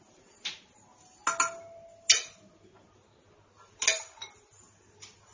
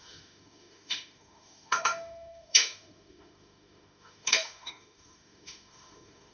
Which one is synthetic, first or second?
second